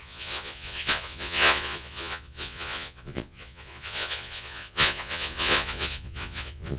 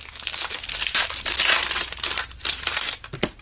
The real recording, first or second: second